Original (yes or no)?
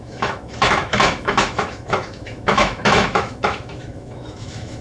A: no